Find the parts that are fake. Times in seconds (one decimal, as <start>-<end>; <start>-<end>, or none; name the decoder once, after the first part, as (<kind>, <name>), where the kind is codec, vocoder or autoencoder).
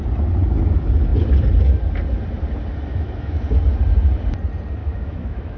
2.9-3.4 (autoencoder, DAC-VAE); 4.8-5.6